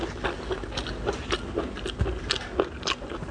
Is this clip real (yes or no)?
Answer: yes